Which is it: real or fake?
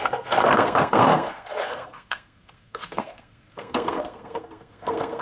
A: fake